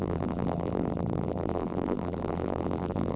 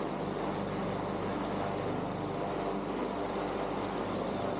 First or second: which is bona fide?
second